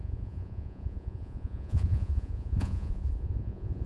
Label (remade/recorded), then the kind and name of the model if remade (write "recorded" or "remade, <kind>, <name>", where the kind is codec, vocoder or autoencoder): remade, vocoder, Vocos